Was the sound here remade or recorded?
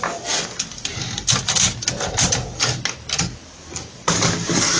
recorded